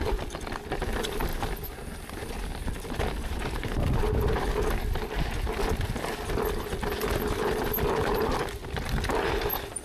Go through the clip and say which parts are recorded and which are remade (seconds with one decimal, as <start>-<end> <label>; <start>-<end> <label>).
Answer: 0.0-9.8 recorded